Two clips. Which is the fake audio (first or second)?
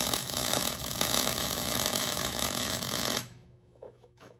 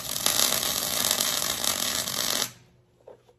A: first